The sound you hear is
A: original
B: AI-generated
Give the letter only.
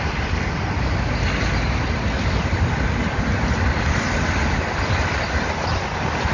A